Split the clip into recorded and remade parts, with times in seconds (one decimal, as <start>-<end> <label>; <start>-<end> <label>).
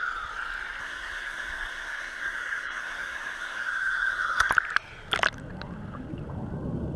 0.0-0.8 recorded; 0.8-4.5 remade; 4.5-7.0 recorded